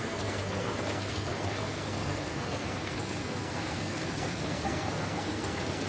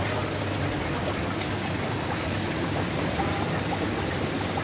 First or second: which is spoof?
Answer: first